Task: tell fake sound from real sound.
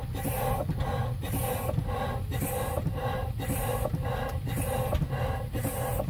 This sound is real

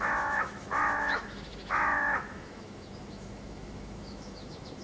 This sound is fake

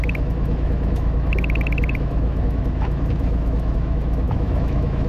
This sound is fake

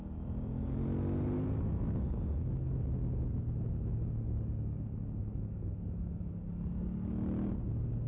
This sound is real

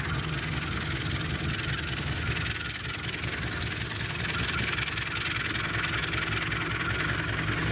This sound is real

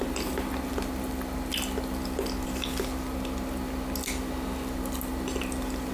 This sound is real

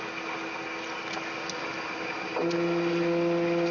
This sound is real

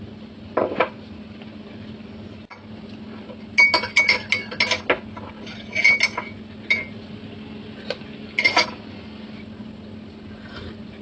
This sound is real